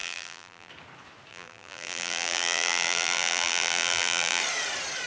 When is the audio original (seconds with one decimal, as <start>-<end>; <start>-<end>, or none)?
0.7-1.3; 4.4-5.1